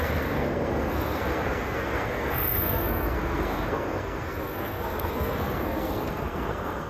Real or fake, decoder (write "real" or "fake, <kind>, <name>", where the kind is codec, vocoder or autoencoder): fake, codec, SNAC